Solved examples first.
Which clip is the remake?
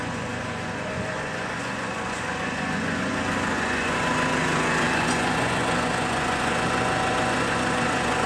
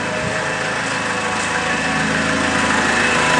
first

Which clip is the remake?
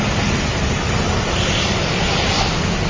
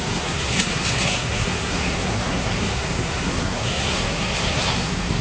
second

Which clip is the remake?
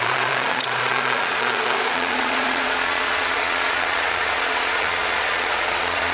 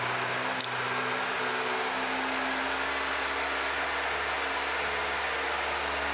first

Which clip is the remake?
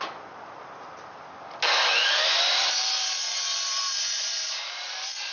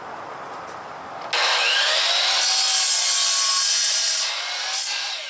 first